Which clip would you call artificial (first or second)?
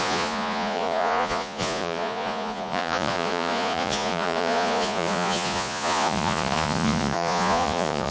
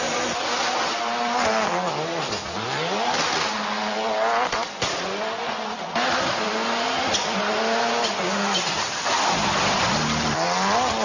first